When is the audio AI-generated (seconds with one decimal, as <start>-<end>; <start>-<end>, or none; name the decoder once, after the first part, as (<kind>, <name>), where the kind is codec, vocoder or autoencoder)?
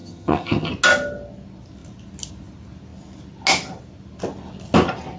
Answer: 0.0-0.7 (vocoder, HiFi-GAN)